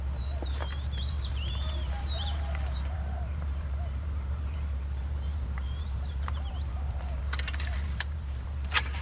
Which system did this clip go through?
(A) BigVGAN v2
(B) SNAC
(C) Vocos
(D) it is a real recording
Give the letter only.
A